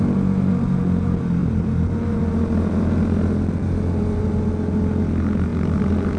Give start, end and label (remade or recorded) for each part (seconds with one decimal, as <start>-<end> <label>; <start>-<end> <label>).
0.0-1.4 recorded; 1.4-2.2 remade; 2.2-6.2 recorded